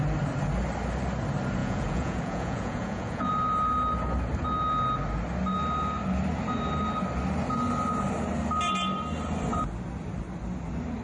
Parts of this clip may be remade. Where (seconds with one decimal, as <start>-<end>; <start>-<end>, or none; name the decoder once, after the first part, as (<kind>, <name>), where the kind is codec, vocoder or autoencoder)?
1.6-3.3 (vocoder, Vocos)